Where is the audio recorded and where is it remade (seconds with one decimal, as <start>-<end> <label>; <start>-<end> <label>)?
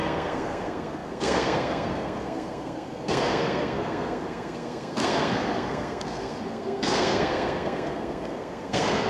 0.0-9.1 remade